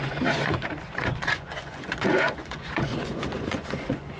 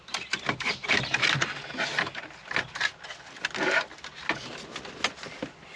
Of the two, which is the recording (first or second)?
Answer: second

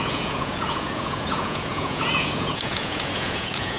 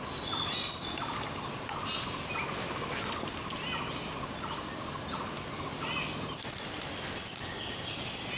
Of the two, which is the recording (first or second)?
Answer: second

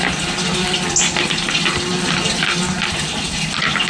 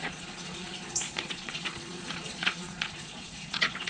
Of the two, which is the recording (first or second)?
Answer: first